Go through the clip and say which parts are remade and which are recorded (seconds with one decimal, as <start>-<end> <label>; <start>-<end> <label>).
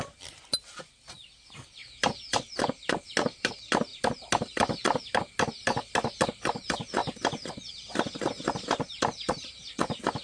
0.0-10.2 recorded